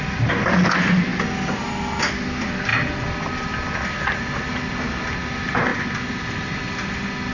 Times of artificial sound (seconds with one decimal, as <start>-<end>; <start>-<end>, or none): none